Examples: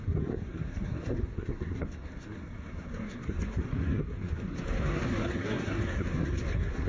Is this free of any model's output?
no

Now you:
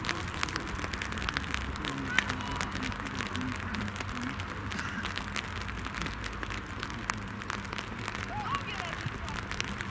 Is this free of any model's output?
yes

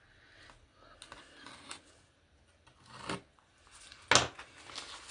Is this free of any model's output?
yes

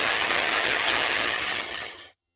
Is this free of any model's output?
no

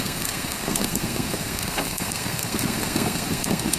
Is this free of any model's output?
no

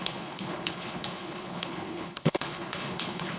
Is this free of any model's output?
no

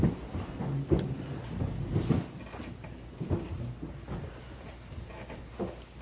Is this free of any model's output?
yes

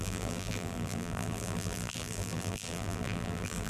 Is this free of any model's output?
no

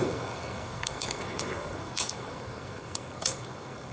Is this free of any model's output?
no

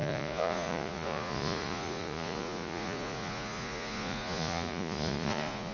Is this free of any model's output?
no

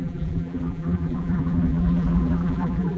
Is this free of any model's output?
no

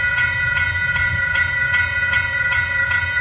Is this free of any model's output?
no